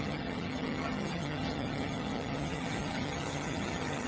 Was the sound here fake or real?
fake